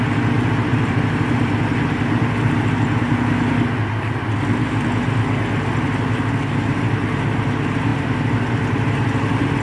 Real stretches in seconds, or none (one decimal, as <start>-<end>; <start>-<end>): 0.0-0.7; 3.0-7.9; 8.4-9.6